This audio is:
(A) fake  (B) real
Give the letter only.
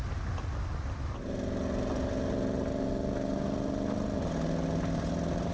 B